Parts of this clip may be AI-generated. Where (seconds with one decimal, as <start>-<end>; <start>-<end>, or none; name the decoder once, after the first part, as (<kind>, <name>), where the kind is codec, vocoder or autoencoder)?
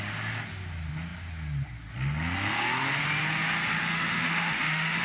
3.8-5.0 (autoencoder, DAC-VAE)